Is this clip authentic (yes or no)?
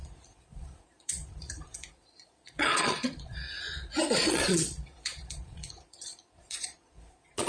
no